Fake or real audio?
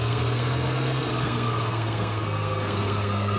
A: fake